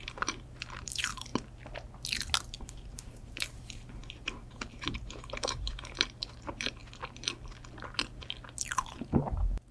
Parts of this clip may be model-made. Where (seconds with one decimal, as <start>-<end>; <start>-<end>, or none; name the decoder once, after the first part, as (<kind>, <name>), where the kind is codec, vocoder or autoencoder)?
0.0-1.3 (vocoder, BigVGAN v2); 2.6-6.8; 8.6-9.7

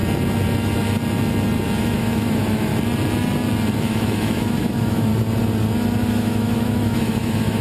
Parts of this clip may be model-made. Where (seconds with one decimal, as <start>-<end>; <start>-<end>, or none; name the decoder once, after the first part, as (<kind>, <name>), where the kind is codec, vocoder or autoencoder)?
1.8-2.7 (autoencoder, DAC-VAE); 3.8-5.1; 6.1-7.6

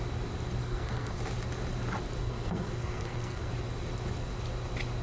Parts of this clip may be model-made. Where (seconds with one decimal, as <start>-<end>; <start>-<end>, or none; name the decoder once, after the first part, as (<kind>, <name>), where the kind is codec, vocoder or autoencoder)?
0.6-1.2 (codec, SNAC); 2.2-3.5

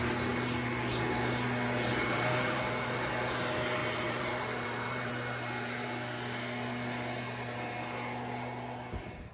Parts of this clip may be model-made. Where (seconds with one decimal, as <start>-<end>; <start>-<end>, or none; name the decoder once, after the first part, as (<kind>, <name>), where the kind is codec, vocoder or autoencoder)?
1.9-3.1 (vocoder, BigVGAN v2); 3.8-5.1

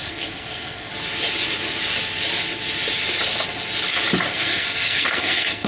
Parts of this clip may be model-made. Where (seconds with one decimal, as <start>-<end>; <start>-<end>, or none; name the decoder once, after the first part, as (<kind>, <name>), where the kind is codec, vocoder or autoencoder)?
0.0-0.9 (codec, SNAC); 4.3-5.7